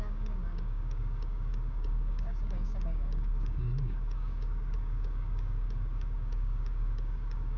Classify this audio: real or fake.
fake